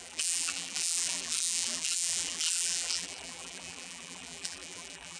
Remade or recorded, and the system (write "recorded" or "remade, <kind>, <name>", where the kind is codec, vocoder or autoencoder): remade, vocoder, BigVGAN v2